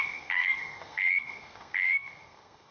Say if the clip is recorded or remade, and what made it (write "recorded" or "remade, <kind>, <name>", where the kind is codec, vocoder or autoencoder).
remade, codec, SNAC